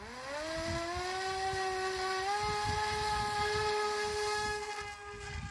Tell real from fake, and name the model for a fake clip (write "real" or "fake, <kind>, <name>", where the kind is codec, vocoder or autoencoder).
real